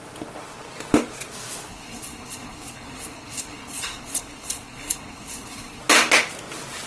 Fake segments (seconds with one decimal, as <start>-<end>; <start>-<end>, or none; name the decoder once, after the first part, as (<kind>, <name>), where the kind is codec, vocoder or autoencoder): 1.7-5.8 (codec, HILCodec)